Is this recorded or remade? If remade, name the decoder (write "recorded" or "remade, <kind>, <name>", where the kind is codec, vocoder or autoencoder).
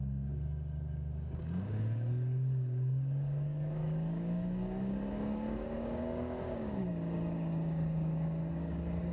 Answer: remade, codec, DAC